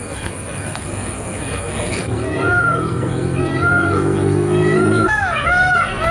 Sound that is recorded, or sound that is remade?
remade